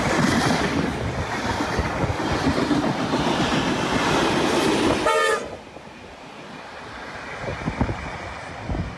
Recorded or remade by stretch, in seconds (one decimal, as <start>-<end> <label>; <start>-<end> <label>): 0.0-9.0 recorded